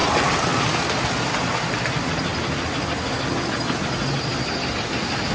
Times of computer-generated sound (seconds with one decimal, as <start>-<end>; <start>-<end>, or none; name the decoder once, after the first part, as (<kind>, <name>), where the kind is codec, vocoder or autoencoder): none